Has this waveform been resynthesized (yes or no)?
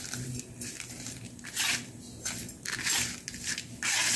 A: no